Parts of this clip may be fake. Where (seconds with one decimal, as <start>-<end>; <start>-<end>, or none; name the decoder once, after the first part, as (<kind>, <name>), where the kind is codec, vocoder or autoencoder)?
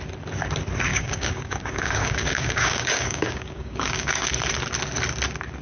0.9-4.3 (codec, DAC)